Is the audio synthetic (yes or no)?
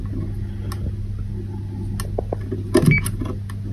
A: no